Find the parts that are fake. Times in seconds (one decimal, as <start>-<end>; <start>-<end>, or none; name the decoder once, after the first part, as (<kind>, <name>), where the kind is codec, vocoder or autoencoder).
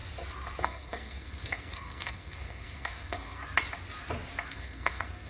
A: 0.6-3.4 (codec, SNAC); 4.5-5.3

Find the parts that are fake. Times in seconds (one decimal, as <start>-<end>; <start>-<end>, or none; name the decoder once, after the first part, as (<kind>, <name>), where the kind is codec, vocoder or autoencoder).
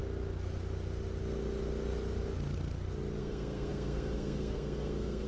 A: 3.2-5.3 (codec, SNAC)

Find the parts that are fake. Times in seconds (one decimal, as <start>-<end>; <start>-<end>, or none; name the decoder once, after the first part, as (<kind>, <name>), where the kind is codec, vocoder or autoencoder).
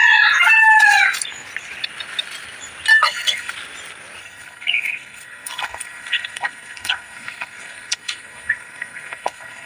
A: 2.9-3.5 (codec, SNAC); 4.2-9.7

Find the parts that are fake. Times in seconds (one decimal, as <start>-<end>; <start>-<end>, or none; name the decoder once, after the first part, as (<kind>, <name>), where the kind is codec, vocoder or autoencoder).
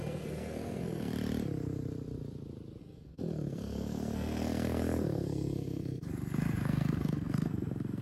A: 0.0-1.1 (codec, SNAC); 2.8-8.0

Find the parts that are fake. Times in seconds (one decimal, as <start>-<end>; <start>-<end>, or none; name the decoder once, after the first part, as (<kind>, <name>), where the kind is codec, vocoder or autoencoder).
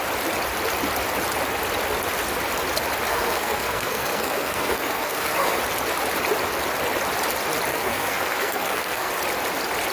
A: 3.1-5.6 (codec, SNAC); 7.7-9.1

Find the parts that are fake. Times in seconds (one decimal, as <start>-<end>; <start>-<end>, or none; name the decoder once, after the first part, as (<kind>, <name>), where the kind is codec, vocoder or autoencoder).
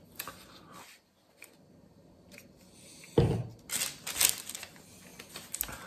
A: none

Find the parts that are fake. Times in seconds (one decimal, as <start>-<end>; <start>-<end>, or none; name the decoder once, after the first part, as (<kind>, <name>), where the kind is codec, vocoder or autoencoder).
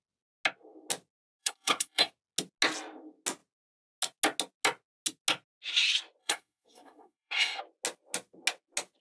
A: 1.4-2.1 (codec, SNAC); 6.2-7.6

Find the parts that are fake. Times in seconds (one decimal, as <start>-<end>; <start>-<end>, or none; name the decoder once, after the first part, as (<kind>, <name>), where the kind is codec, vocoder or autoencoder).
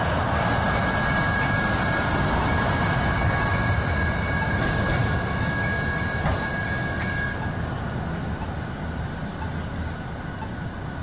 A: none